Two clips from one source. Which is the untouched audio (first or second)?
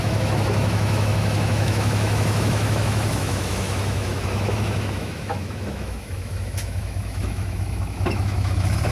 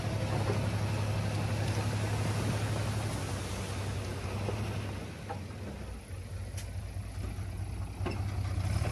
second